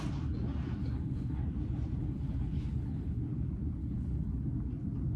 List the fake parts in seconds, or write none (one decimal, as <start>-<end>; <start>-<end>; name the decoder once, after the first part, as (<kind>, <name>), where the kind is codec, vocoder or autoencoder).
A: 0.8-1.4 (codec, HILCodec); 2.0-3.2; 3.8-4.4